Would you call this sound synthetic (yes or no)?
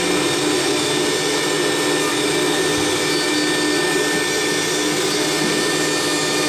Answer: no